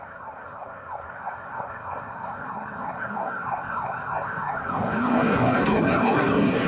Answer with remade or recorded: remade